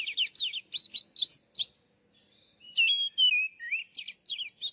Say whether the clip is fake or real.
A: real